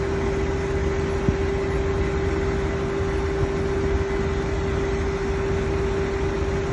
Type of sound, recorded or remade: recorded